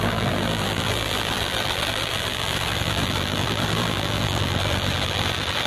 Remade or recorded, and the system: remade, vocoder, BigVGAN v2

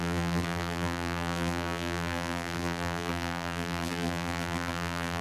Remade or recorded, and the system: remade, vocoder, BigVGAN v2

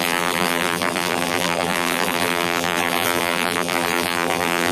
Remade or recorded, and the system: remade, vocoder, BigVGAN v2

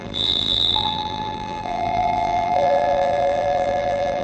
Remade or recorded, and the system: remade, vocoder, BigVGAN v2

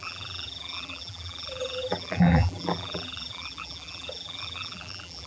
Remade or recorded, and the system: remade, vocoder, BigVGAN v2